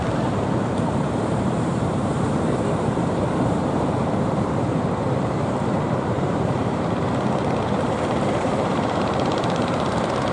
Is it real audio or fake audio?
fake